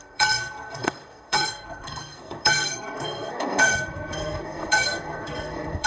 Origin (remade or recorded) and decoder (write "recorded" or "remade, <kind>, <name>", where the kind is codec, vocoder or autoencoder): remade, codec, SNAC